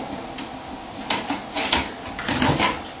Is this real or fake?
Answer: real